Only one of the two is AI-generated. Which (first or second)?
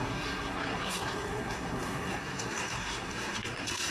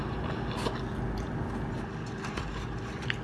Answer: first